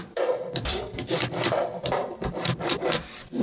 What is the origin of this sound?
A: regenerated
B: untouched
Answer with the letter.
A